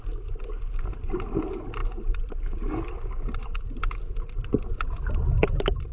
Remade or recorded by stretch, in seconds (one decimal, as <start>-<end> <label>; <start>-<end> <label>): 0.0-5.9 recorded

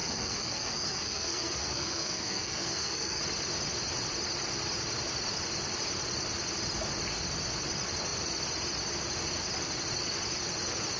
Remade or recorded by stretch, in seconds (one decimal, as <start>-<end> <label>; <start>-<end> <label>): 0.0-3.2 remade; 3.2-11.0 recorded

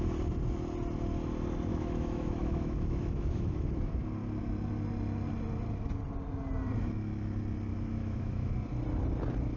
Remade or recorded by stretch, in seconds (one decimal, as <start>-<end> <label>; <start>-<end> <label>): 0.0-1.7 recorded; 1.7-3.8 remade; 3.8-7.7 recorded; 7.7-8.5 remade; 8.5-9.6 recorded

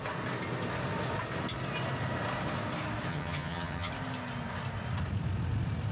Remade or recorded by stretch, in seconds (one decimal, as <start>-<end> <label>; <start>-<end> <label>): 0.0-3.1 recorded; 3.1-3.9 remade; 3.9-5.9 recorded